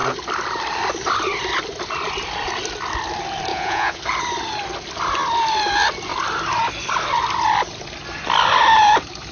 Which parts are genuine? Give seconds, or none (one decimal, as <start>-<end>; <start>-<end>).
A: 0.0-3.5; 4.0-9.3